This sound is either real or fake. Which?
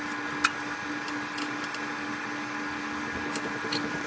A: real